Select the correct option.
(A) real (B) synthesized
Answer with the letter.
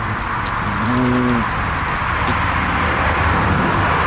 A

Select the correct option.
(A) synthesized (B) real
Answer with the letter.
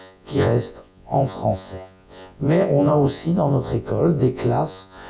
A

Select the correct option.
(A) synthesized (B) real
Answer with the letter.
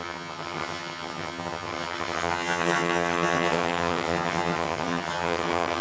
A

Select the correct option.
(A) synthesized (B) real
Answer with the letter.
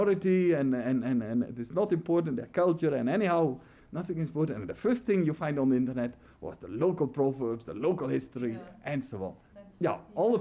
B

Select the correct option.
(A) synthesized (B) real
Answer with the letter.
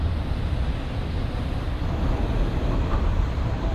A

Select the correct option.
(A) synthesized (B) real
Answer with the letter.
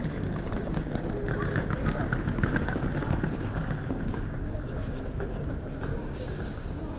A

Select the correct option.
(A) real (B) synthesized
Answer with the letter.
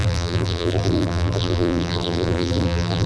B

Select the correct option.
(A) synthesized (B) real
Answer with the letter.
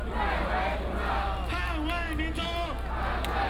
B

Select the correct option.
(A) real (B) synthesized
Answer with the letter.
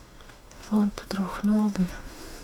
B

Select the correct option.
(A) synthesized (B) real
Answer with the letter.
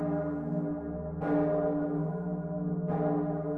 B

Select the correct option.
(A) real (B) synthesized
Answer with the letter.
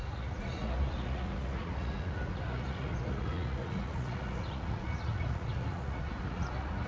B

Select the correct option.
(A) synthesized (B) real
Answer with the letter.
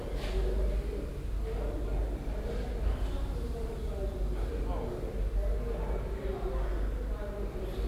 B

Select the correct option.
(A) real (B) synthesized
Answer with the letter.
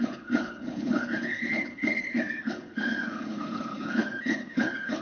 B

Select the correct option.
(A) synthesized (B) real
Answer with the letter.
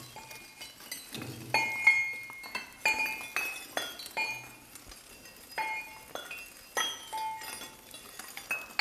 B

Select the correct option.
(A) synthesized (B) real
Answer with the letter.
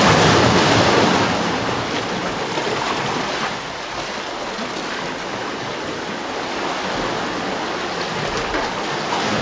B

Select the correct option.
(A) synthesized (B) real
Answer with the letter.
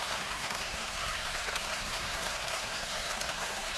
A